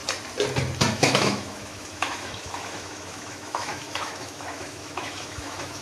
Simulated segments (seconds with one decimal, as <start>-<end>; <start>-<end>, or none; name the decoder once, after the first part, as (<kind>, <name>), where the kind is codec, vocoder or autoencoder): 0.9-5.8 (autoencoder, DAC-VAE)